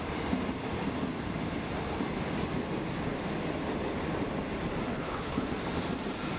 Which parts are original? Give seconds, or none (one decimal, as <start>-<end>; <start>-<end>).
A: 0.0-4.9; 5.5-6.4